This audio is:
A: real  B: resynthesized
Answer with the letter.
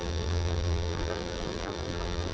B